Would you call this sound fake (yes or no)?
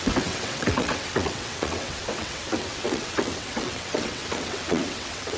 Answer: yes